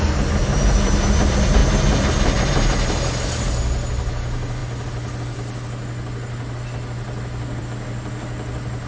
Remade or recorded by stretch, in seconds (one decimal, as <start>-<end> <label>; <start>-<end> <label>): 0.0-8.9 recorded